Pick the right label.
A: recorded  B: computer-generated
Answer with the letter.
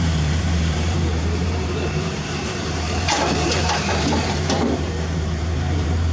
B